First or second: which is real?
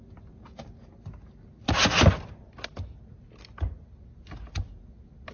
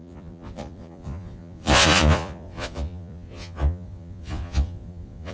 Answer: first